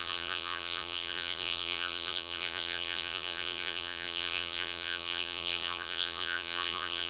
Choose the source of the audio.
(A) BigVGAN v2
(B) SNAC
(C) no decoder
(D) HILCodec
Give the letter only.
A